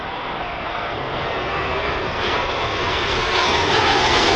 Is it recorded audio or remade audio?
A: remade